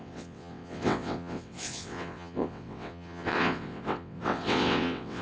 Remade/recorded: remade